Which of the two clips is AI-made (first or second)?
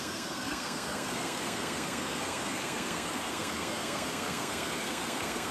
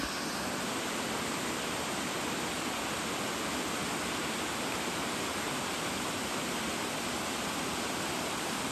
first